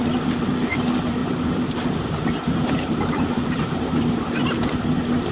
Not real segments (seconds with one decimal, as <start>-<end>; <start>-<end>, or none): 1.2-4.4